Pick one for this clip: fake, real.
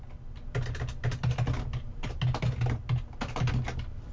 real